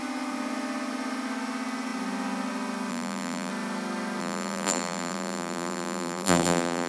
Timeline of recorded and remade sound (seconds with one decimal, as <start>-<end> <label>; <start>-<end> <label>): 0.0-2.9 recorded; 2.9-3.5 remade; 3.5-4.2 recorded; 4.2-6.9 remade